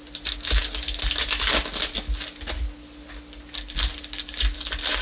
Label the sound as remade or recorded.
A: recorded